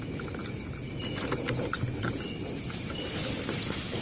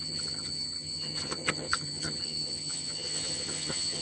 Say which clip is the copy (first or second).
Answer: second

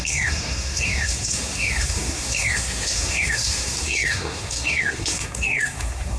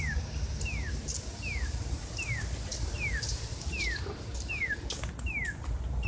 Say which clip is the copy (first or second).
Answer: first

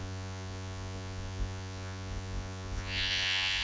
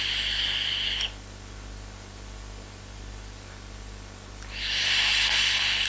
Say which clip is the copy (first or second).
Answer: first